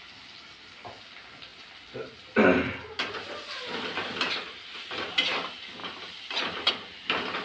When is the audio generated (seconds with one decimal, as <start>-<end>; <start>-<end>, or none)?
none